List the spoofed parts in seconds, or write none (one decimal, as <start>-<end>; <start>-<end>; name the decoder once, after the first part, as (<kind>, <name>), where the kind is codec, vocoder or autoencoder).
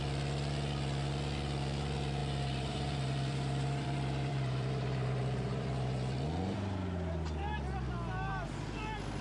2.2-6.2 (vocoder, BigVGAN v2)